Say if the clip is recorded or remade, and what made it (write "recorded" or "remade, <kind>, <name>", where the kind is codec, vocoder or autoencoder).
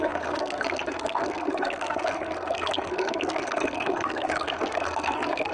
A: remade, codec, SNAC